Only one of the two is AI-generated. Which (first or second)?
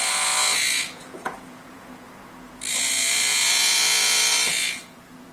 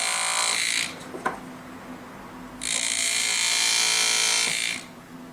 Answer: first